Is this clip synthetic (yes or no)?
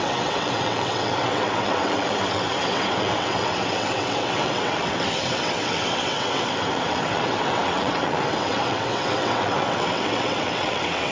yes